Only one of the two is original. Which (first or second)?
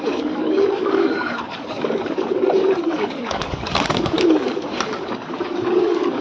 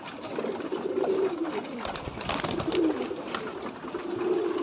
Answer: second